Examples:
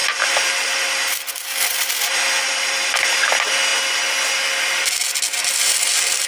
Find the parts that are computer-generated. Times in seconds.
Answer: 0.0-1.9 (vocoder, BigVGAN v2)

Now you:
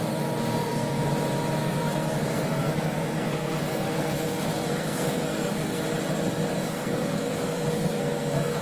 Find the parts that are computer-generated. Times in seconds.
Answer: 0.6-1.1 (codec, SNAC); 1.6-5.8; 6.5-8.6

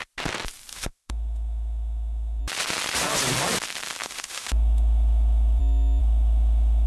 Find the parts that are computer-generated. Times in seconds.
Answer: 0.7-2.4 (autoencoder, DAC-VAE); 4.0-5.6; 6.0-6.9

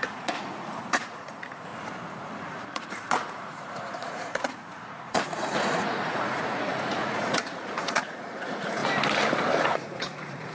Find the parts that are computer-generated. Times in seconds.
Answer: 0.0-1.7 (vocoder, Vocos); 2.5-8.8; 9.6-10.5

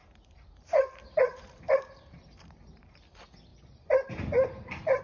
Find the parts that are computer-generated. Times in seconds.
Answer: 0.0-3.0 (vocoder, BigVGAN v2); 3.5-5.0

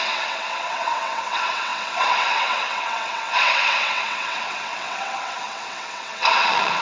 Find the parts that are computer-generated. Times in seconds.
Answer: 0.0-6.8 (vocoder, WaveNeXt)